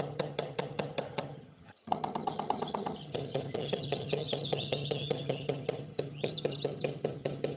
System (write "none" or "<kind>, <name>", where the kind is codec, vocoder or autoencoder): vocoder, HiFi-GAN